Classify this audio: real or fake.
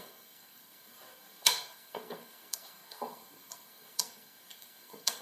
fake